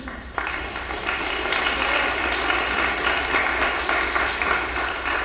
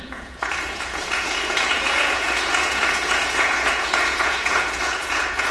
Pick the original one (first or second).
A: first